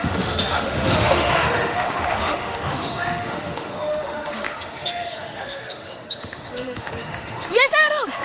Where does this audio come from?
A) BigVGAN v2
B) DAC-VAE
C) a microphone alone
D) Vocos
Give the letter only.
B